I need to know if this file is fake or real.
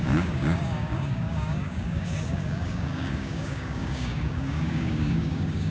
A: fake